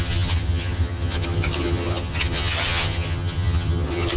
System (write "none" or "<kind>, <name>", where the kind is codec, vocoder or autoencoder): vocoder, HiFi-GAN